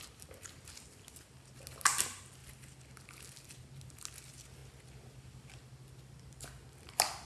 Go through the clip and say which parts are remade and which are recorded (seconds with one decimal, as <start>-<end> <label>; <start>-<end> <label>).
0.0-7.3 recorded